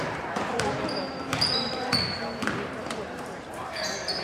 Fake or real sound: fake